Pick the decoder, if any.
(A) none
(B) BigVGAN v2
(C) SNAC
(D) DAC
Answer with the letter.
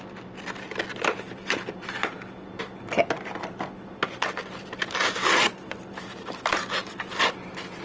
A